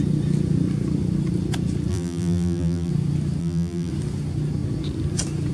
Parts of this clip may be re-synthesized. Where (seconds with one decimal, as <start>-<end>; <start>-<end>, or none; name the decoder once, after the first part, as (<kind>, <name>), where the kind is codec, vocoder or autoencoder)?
1.9-2.9 (vocoder, BigVGAN v2); 3.4-3.9